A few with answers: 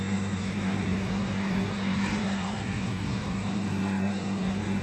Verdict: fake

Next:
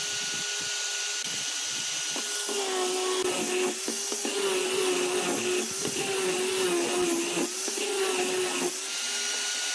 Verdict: real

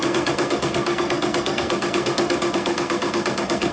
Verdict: fake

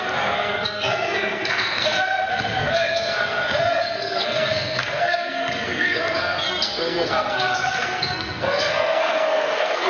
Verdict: fake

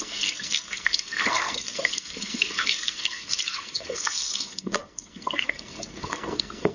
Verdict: fake